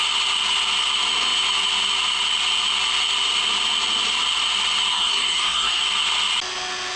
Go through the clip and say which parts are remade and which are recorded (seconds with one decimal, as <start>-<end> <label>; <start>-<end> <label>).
0.0-4.9 recorded; 4.9-5.8 remade; 5.8-7.0 recorded